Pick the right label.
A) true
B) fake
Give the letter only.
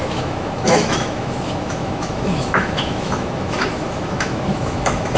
B